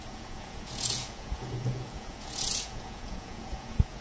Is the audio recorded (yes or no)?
no